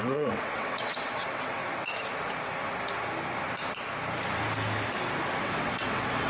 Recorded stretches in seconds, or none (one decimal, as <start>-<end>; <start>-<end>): 1.6-5.4